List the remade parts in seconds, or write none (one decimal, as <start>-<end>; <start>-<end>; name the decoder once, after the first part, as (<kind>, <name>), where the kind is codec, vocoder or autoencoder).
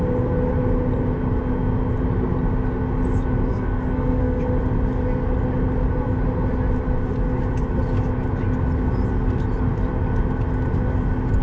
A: 3.5-4.4 (codec, SNAC)